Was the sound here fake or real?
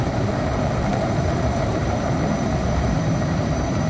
fake